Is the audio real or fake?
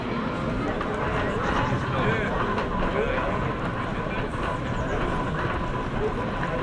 real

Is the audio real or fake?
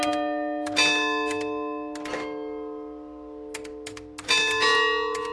real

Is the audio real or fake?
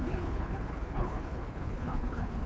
fake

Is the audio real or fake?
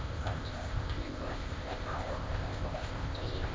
fake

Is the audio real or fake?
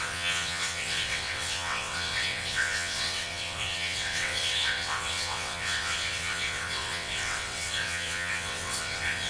fake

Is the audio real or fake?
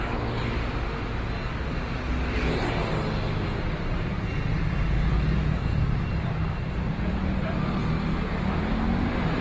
real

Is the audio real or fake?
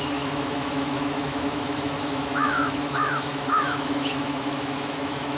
fake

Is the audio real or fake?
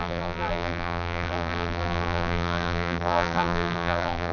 fake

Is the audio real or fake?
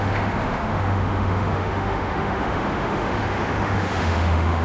fake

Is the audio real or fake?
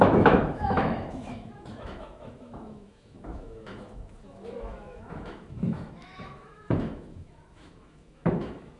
fake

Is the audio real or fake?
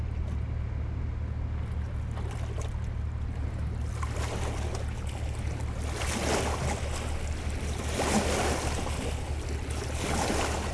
real